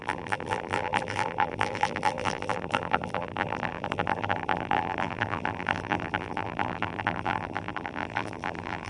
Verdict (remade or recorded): remade